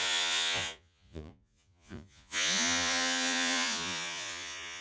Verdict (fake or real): fake